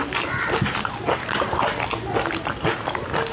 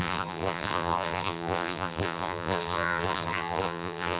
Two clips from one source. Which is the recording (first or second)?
first